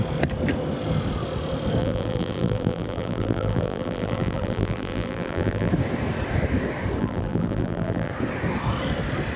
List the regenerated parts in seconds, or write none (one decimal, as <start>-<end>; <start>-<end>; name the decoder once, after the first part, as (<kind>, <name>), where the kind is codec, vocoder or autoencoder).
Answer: 1.8-5.7 (vocoder, BigVGAN v2); 7.0-8.1